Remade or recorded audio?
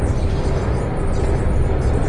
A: recorded